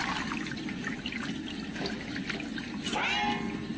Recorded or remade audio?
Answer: recorded